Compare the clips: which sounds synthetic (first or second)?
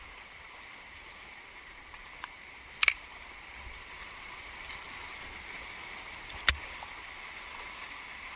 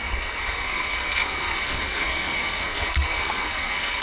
second